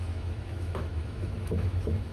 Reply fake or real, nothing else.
fake